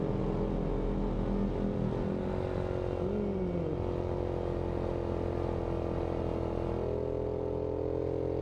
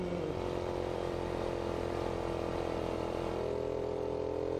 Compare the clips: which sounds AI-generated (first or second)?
second